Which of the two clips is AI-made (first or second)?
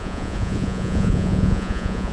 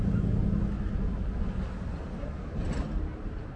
first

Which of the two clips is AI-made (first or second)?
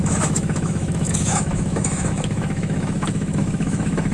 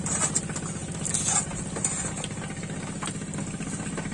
first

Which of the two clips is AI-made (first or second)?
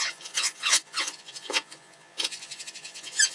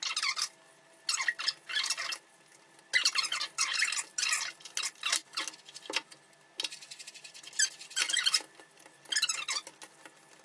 first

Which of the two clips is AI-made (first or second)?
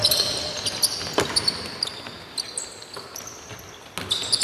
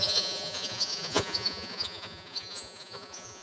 second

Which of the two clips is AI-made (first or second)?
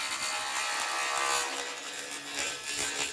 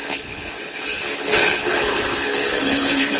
second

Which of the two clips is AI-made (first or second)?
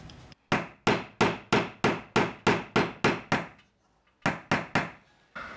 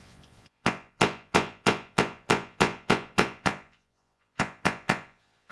second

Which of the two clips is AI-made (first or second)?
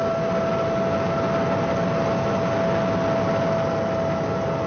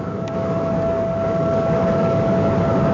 second